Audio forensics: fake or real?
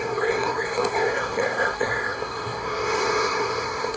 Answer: fake